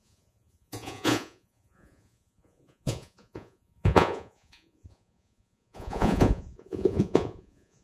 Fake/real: fake